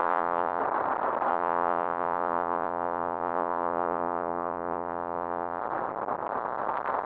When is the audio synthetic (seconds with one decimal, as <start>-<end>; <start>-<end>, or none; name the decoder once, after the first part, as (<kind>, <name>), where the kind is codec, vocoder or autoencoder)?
0.0-0.6 (vocoder, Vocos); 1.3-5.6